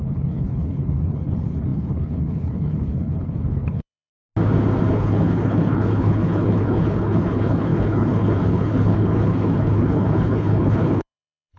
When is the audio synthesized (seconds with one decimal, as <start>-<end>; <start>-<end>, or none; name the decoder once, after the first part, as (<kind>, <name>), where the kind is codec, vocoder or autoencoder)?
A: 0.0-4.1 (codec, HILCodec); 4.9-11.6